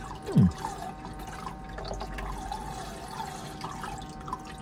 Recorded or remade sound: recorded